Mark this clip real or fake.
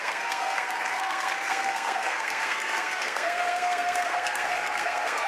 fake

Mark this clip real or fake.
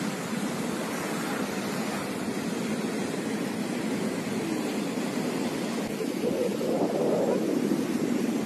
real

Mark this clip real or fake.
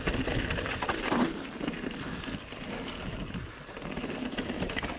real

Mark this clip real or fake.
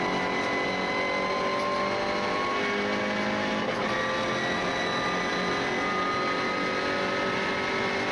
real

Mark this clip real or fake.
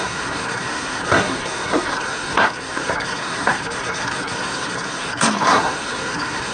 fake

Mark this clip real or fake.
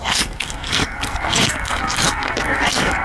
fake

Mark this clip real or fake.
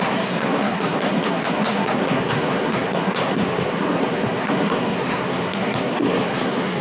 fake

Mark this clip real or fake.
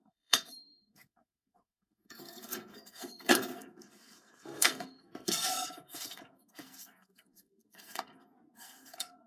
fake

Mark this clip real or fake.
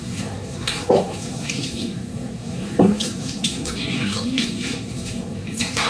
fake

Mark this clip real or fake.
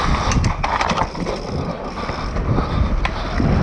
real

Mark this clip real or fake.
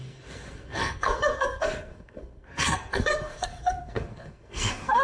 fake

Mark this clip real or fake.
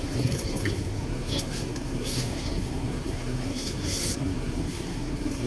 fake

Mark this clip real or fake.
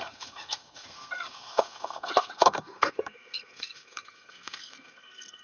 fake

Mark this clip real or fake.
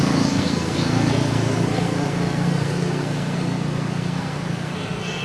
fake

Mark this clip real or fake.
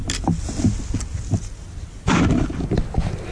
real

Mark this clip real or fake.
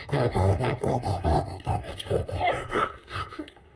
fake